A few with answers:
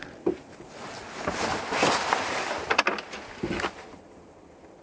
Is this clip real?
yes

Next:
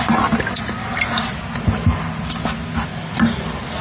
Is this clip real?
yes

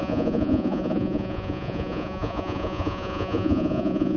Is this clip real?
no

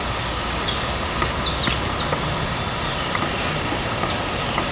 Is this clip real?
yes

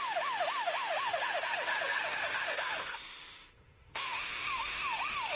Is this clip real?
no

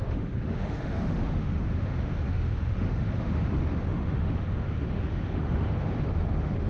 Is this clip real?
no